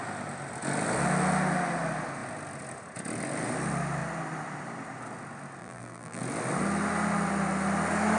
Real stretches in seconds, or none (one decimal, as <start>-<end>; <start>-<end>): 0.0-5.6; 6.2-8.2